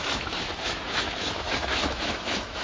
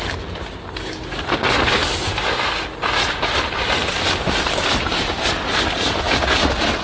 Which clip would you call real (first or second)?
second